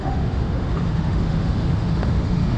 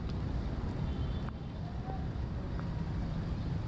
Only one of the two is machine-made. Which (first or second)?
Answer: first